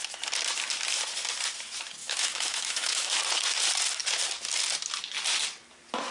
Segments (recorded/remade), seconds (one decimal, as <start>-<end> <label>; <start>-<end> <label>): 0.0-2.0 recorded; 2.0-3.2 remade; 3.2-6.1 recorded